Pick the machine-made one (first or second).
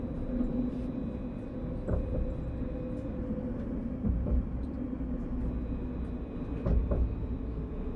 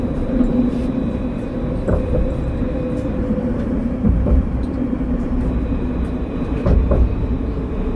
second